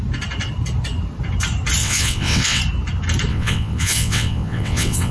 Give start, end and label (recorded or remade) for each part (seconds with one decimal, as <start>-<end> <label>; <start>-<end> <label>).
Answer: 0.0-1.8 recorded; 1.8-2.6 remade; 2.6-3.3 recorded; 3.3-5.1 remade